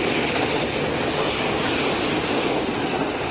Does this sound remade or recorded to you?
recorded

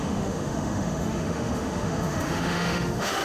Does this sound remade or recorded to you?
remade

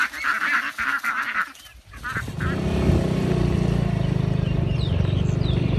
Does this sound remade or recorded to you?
recorded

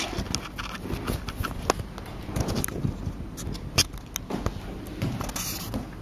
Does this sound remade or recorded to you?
recorded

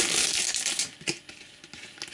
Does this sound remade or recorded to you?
recorded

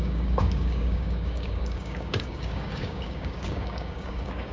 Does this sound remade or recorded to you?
remade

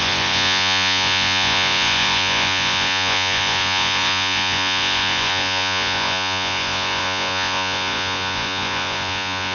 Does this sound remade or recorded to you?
remade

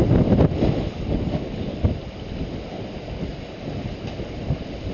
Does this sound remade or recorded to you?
recorded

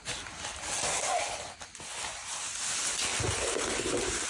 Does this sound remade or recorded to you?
recorded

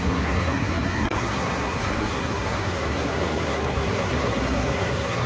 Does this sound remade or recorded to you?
remade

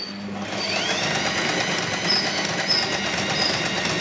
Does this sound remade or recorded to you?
recorded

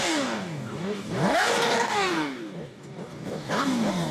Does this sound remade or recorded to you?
remade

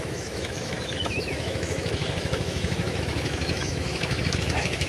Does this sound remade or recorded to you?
remade